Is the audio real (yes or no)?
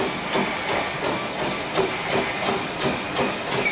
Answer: yes